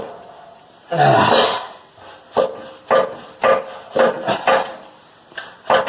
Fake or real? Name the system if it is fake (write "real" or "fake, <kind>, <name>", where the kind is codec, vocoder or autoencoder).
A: real